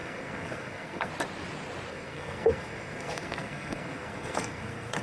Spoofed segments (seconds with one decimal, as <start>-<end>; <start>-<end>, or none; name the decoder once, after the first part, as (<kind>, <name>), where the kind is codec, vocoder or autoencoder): 0.0-1.1 (codec, SNAC); 1.9-5.0